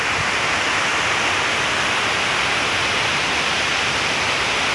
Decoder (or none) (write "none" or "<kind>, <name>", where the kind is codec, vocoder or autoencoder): none